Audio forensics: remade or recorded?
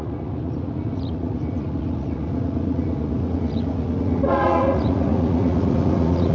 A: remade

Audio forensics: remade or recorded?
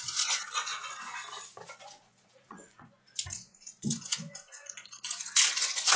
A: remade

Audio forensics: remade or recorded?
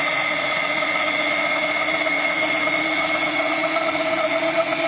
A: remade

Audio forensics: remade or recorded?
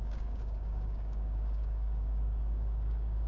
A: remade